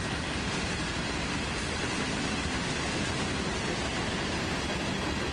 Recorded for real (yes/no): yes